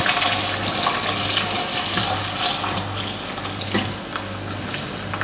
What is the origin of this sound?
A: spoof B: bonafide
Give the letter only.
B